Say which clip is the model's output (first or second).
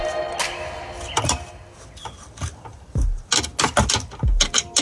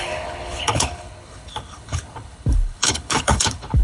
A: second